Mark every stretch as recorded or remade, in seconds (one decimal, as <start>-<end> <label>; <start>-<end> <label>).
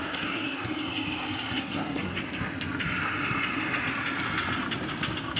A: 0.0-0.6 remade; 0.6-1.6 recorded; 1.6-2.2 remade; 2.2-5.4 recorded